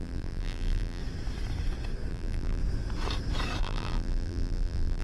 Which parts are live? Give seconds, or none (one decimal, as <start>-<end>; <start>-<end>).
1.0-2.1; 2.6-3.6